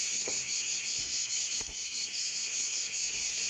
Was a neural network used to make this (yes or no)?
yes